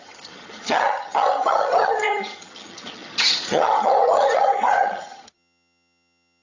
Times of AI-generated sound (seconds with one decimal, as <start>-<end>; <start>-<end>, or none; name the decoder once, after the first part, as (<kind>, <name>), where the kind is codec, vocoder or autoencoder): 0.0-6.4 (vocoder, HiFi-GAN)